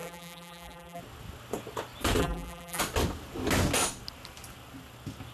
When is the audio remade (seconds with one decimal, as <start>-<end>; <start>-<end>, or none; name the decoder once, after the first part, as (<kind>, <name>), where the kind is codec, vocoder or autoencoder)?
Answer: 0.0-1.0 (vocoder, BigVGAN v2); 2.2-2.8